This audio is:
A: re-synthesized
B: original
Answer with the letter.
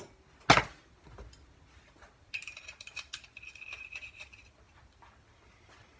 B